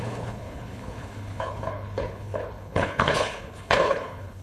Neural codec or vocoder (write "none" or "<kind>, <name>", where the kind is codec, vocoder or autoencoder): codec, HILCodec